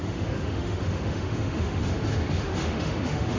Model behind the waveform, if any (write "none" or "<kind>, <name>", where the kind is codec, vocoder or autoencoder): autoencoder, DAC-VAE